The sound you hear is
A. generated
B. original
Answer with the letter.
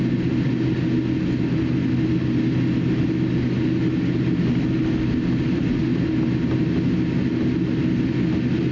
B